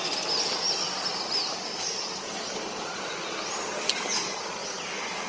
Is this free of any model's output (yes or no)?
yes